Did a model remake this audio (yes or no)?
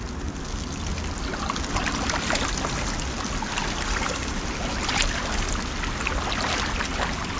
no